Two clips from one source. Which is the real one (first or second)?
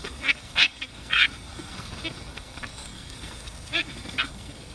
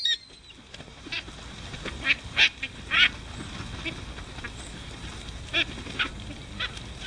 second